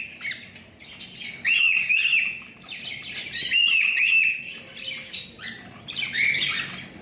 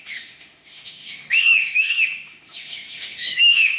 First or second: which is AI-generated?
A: second